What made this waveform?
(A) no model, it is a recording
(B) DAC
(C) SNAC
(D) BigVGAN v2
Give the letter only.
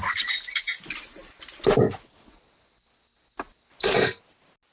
A